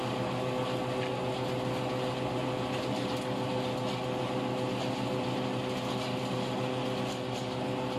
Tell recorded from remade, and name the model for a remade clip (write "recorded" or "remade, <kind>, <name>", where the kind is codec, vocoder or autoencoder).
recorded